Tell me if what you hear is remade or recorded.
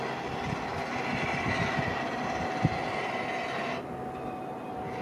recorded